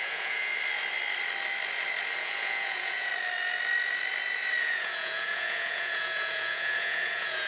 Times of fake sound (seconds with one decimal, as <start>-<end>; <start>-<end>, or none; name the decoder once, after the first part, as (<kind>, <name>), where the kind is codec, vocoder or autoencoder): 0.0-0.5 (vocoder, Vocos); 2.2-3.1; 4.6-7.5